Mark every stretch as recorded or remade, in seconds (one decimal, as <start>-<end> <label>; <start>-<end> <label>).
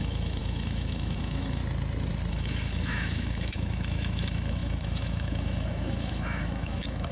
0.0-1.6 remade; 1.6-2.3 recorded; 2.3-7.1 remade